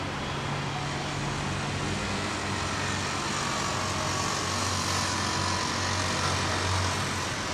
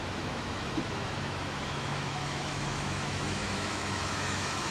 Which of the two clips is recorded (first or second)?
first